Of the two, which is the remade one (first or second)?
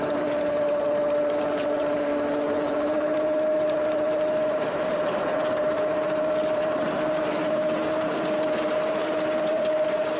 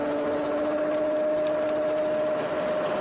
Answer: first